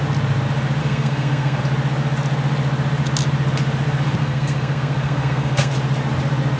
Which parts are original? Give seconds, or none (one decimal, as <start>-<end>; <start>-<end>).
0.0-0.8; 1.6-4.2; 5.7-6.6

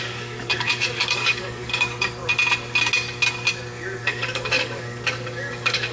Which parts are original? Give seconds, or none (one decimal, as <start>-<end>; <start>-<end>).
2.2-4.0

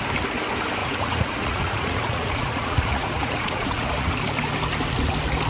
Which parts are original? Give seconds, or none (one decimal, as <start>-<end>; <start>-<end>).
0.0-0.8; 4.1-5.5